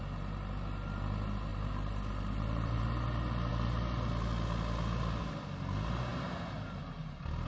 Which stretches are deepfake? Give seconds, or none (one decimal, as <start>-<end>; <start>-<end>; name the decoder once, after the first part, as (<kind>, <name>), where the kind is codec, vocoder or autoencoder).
1.5-2.8 (vocoder, BigVGAN v2)